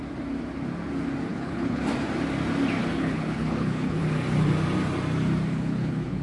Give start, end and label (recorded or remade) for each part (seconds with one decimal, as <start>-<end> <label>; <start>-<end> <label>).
0.0-1.3 recorded; 1.3-1.8 remade; 1.8-2.8 recorded; 2.8-4.0 remade; 4.0-5.5 recorded; 5.5-6.2 remade